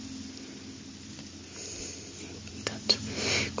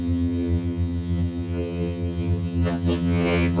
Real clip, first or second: first